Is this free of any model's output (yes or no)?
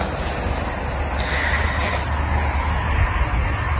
yes